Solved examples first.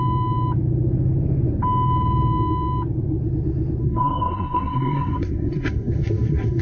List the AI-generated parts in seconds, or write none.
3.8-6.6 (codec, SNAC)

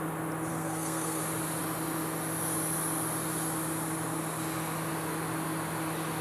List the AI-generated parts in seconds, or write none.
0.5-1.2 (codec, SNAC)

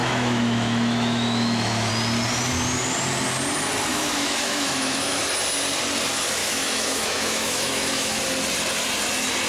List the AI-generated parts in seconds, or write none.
0.0-1.9 (autoencoder, DAC-VAE); 3.9-5.2; 6.4-8.2

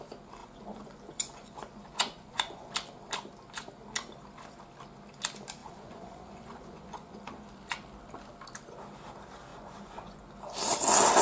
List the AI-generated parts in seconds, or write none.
0.4-2.7 (vocoder, Vocos); 5.6-7.3; 9.5-10.2